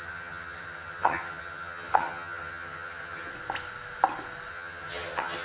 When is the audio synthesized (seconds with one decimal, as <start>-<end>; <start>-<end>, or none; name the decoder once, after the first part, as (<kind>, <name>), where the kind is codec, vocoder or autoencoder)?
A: 0.0-3.3 (vocoder, HiFi-GAN); 4.5-5.4